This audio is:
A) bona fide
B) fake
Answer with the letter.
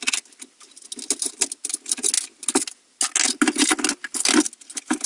A